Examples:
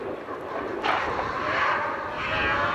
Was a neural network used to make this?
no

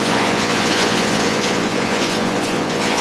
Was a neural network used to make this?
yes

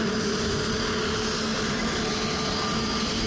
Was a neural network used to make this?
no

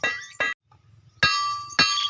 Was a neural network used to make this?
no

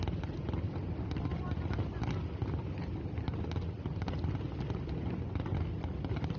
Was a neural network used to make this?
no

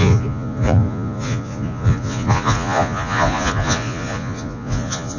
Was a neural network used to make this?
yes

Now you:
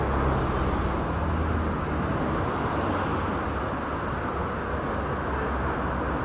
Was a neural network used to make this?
no